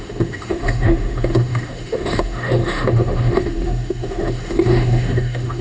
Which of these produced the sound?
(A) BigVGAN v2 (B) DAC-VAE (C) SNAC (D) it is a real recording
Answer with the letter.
B